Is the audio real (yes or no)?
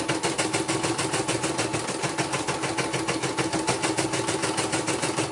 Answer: yes